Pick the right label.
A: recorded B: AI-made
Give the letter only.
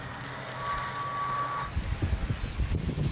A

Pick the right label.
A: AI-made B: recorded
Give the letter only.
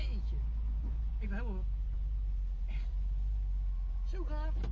B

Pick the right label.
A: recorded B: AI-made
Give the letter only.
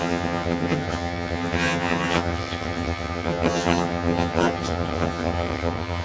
B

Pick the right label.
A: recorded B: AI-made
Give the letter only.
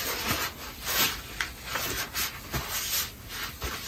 A